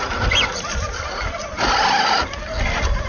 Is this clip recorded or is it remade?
recorded